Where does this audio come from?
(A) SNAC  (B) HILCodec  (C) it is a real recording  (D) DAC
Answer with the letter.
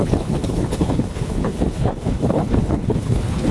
B